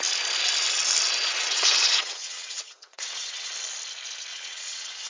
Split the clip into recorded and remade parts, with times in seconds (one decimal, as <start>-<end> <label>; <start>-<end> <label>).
0.0-1.3 recorded; 1.3-3.5 remade; 3.5-4.3 recorded; 4.3-5.1 remade